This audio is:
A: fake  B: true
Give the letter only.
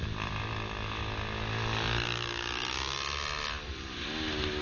B